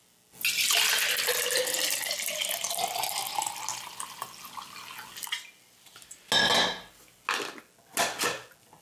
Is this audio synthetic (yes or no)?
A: no